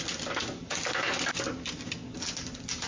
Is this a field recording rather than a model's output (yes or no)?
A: yes